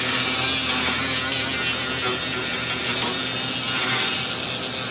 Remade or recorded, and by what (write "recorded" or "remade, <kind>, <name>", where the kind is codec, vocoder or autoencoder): recorded